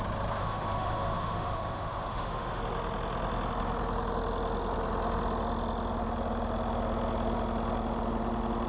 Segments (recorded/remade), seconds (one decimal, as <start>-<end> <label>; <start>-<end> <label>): 0.0-0.4 recorded; 0.4-2.6 remade; 2.6-8.7 recorded

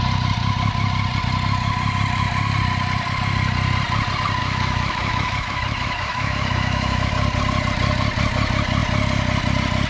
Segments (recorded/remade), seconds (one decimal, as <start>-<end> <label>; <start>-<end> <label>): 0.0-4.4 recorded; 4.4-7.1 remade; 7.1-9.9 recorded

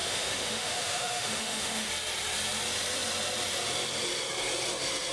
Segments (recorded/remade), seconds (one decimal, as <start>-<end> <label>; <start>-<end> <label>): 0.0-1.9 remade; 1.9-5.1 recorded

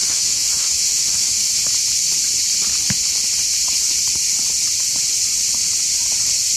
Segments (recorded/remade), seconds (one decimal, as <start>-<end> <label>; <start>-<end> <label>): 0.0-1.5 remade; 1.5-6.6 recorded

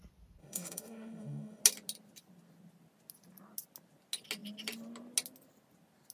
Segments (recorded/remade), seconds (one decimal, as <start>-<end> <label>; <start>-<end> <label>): 0.0-0.4 recorded; 0.4-1.6 remade; 1.6-6.1 recorded

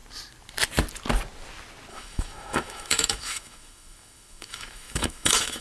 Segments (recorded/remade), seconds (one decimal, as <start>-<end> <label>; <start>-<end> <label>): 0.0-1.9 recorded; 1.9-5.6 remade